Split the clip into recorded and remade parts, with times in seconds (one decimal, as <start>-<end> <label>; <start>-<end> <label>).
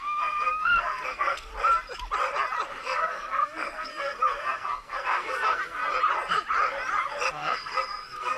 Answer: 0.0-1.5 remade; 1.5-2.8 recorded; 2.8-5.8 remade; 5.8-7.3 recorded; 7.3-8.4 remade